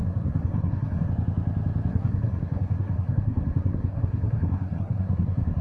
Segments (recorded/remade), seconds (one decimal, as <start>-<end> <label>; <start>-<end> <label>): 0.0-1.1 remade; 1.1-1.9 recorded; 1.9-5.6 remade